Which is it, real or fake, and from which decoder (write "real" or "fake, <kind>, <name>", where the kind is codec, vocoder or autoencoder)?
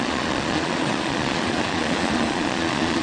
fake, vocoder, Vocos